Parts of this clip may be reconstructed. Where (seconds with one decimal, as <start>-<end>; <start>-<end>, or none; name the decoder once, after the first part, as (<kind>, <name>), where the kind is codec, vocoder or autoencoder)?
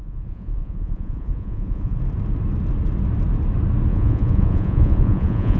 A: 0.0-2.0 (vocoder, Vocos); 3.9-5.6